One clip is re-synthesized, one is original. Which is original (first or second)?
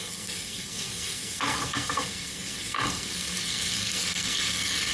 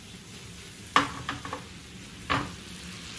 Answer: second